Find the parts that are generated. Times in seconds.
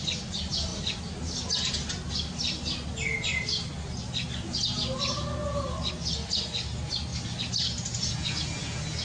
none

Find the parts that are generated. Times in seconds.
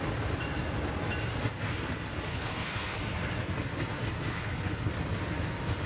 2.3-3.0; 4.3-4.9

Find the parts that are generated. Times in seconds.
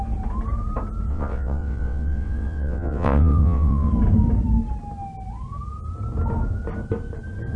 1.1-3.9